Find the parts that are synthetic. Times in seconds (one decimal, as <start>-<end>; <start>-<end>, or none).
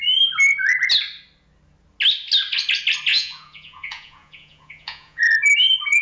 3.1-5.2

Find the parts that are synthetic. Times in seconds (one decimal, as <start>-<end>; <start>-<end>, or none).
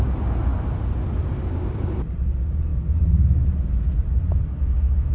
none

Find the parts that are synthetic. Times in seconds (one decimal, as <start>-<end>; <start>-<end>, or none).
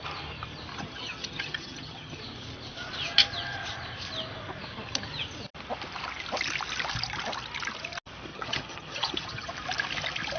0.7-2.2; 8.3-9.5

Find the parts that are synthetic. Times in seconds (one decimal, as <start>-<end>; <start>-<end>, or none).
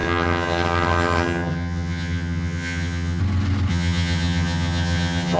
0.0-3.2; 3.7-5.4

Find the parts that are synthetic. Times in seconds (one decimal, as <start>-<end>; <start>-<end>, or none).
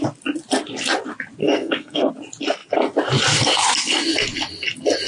1.4-2.1